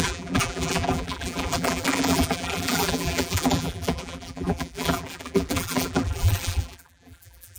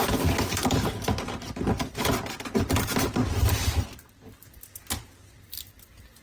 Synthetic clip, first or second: first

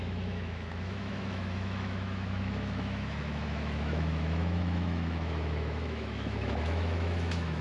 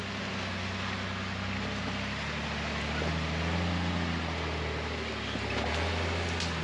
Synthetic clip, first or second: first